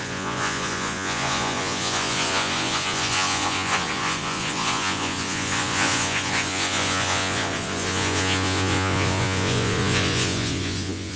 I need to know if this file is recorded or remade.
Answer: remade